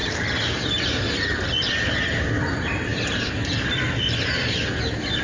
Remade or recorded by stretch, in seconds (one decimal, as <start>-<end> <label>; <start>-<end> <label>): 0.0-5.2 recorded